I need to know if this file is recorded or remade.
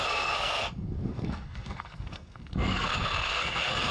remade